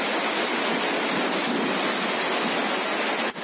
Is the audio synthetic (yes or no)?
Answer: no